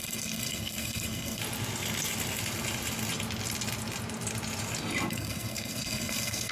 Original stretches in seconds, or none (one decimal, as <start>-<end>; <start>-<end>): 1.4-5.1